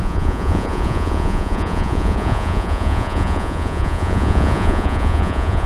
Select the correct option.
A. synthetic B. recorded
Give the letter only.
A